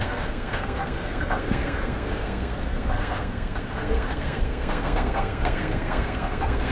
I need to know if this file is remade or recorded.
remade